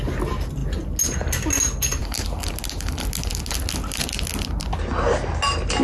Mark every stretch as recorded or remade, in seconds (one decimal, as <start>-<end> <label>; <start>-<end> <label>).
0.0-5.8 recorded

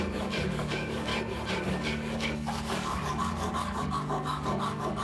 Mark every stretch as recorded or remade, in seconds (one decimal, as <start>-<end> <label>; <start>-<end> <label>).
0.0-1.1 remade; 1.1-1.6 recorded; 1.6-5.0 remade